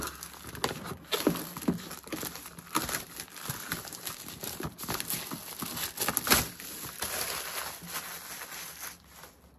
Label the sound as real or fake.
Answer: real